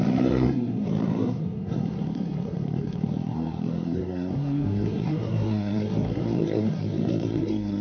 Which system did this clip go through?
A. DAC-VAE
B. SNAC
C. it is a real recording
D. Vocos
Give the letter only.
B